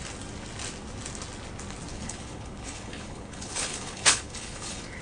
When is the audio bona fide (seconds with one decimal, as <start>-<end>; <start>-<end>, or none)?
0.0-1.9